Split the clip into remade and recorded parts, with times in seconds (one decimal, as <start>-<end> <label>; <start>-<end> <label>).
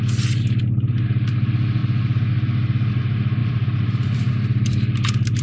0.0-3.4 recorded; 3.4-4.3 remade; 4.3-5.4 recorded